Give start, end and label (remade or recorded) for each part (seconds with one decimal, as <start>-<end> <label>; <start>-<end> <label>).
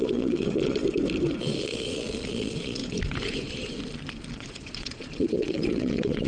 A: 0.0-0.8 remade; 0.8-1.4 recorded; 1.4-2.8 remade; 2.8-4.3 recorded; 4.3-6.3 remade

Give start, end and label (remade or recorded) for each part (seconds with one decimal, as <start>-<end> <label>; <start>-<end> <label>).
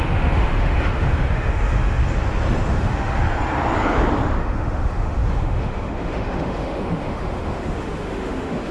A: 0.0-2.0 remade; 2.0-2.7 recorded; 2.7-3.2 remade; 3.2-4.4 recorded; 4.4-8.7 remade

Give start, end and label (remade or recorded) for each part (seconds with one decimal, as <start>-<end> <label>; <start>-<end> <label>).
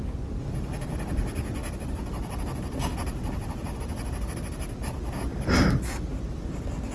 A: 0.0-6.9 recorded